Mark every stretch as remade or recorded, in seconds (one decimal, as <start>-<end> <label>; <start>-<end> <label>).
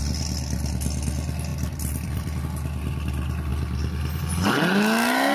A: 0.0-1.5 recorded; 1.5-2.4 remade; 2.4-5.3 recorded